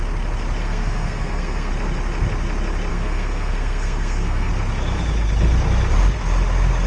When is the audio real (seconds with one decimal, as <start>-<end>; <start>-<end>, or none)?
0.0-0.6; 1.7-2.9; 4.5-6.9